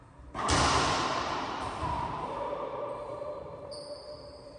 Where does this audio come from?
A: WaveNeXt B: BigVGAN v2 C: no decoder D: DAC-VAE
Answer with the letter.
B